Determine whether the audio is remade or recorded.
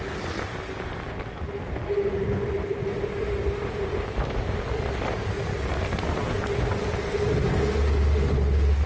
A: recorded